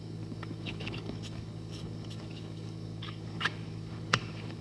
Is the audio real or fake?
fake